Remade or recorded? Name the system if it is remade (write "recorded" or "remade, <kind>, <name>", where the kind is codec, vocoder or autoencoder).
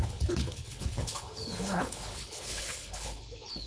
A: remade, codec, HILCodec